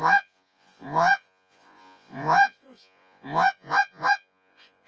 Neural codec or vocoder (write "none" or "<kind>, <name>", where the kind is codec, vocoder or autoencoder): vocoder, Vocos